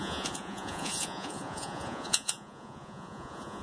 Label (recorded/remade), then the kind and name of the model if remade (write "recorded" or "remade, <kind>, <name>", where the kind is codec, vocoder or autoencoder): remade, vocoder, Vocos